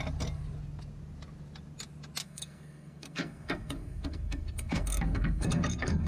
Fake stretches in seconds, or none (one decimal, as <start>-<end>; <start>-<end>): 2.2-6.1